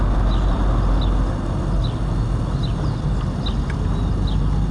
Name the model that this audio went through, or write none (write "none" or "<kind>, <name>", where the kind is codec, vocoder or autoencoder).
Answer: none